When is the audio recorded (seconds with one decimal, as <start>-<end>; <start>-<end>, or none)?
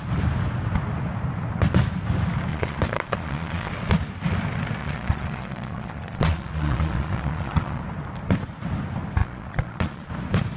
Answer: 0.0-2.5; 3.7-4.8; 7.8-9.2; 10.1-10.6